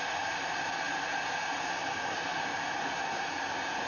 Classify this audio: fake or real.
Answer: real